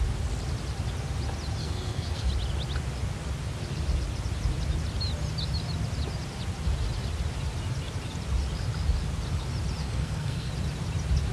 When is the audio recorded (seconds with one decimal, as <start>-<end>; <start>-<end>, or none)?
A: 0.0-1.6; 2.3-9.8; 10.5-11.3